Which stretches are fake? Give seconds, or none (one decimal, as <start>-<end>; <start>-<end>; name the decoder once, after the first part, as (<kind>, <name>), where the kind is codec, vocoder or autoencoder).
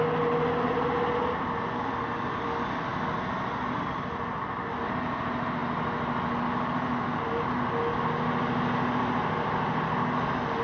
none